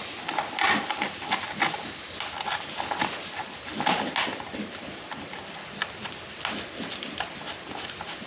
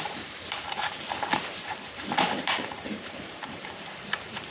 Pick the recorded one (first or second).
first